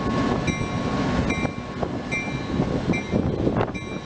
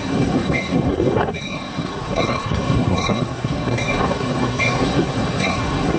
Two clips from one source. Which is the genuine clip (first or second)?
first